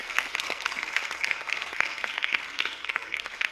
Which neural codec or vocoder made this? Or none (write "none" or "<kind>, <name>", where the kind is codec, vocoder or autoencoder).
codec, SNAC